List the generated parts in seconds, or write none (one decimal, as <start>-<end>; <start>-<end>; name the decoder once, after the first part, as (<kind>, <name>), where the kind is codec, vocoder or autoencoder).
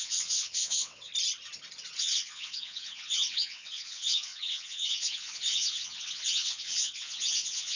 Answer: 0.0-1.1 (vocoder, WaveNeXt); 2.0-7.8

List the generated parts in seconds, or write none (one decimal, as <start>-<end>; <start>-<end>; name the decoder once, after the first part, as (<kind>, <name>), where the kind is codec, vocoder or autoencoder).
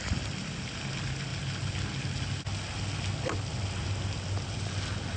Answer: none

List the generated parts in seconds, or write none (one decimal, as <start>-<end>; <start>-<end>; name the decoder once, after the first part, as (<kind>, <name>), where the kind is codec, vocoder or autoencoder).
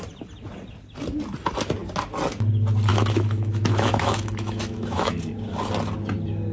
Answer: 2.9-5.2 (autoencoder, DAC-VAE)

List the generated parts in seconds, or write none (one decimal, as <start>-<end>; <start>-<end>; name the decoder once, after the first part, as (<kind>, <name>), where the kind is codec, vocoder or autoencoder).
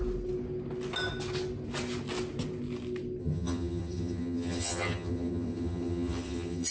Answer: 3.2-6.7 (vocoder, HiFi-GAN)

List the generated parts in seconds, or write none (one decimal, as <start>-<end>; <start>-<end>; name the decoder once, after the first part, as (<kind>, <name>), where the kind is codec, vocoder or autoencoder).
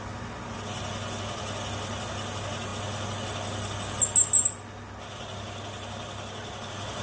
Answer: none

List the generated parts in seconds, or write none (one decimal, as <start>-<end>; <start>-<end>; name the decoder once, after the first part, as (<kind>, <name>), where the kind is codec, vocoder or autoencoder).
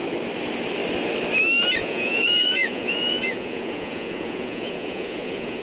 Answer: 1.8-5.6 (vocoder, Vocos)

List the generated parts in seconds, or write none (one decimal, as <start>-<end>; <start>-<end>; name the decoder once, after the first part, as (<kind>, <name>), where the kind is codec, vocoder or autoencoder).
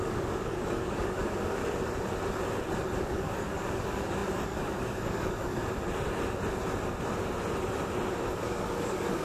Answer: 0.0-1.6 (codec, DAC); 3.0-5.6; 8.1-9.2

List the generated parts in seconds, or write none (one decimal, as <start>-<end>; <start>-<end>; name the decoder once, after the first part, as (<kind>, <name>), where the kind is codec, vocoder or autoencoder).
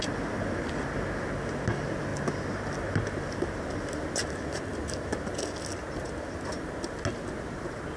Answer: none